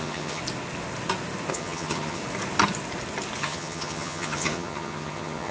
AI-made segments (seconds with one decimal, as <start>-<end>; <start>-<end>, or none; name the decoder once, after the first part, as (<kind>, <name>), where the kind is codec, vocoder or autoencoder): 0.0-0.4 (vocoder, HiFi-GAN); 1.5-2.2; 3.4-5.5

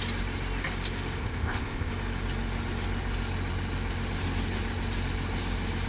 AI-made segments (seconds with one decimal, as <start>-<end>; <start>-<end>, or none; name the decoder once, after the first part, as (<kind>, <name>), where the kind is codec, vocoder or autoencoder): 1.2-1.9 (codec, ZipCodec)

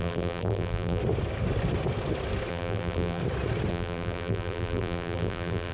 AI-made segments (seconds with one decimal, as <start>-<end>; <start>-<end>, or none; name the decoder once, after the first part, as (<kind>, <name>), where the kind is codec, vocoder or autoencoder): 0.0-1.0 (vocoder, BigVGAN v2); 2.5-3.2; 3.7-5.7

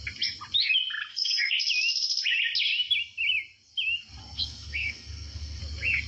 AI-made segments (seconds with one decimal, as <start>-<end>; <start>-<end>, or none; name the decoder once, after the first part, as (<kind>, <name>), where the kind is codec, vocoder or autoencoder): 1.1-1.6 (codec, SNAC); 4.2-5.6